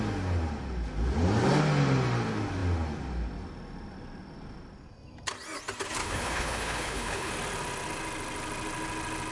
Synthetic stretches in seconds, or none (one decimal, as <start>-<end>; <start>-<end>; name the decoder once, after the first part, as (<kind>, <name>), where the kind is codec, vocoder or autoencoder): 6.0-7.3 (codec, HILCodec)